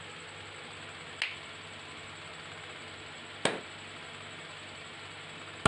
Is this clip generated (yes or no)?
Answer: no